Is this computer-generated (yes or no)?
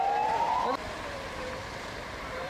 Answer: yes